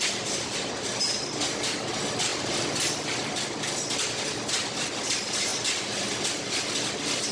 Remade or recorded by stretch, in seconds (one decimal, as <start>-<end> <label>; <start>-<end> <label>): 0.0-7.3 recorded